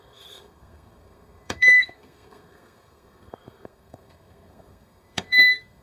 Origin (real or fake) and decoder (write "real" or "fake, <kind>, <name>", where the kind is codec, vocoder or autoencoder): fake, codec, SNAC